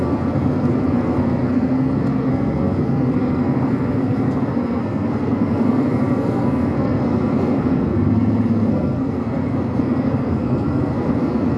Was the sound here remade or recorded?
remade